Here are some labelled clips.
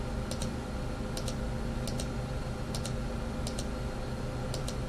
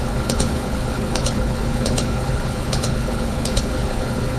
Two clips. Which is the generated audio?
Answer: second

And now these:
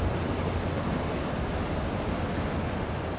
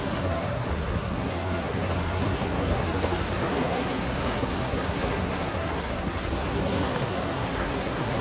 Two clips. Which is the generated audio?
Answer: second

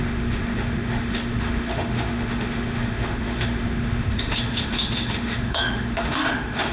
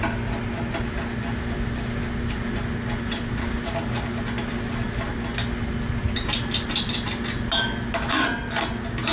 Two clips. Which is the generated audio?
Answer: first